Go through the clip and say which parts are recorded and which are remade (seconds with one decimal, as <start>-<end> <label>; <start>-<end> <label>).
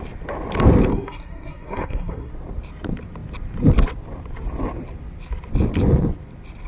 0.0-0.9 recorded; 0.9-2.3 remade; 2.3-6.7 recorded